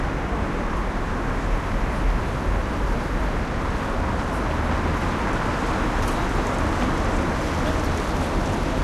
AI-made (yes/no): no